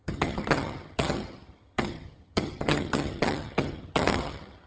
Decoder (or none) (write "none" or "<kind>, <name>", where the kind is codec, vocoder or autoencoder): vocoder, HiFi-GAN